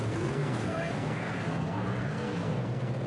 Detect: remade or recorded remade